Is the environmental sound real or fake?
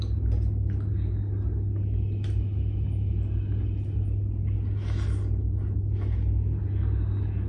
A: real